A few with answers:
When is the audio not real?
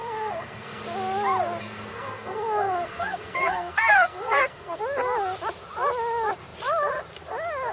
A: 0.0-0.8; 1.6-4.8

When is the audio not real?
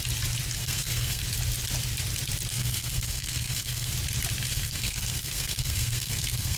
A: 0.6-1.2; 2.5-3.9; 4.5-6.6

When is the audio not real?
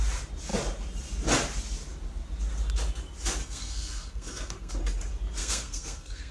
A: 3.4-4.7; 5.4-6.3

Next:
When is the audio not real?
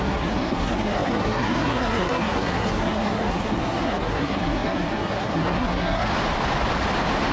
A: 0.0-6.1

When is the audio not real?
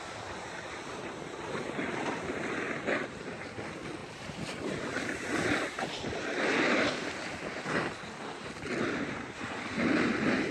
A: none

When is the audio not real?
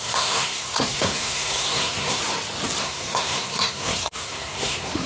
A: 0.0-2.2; 2.8-5.1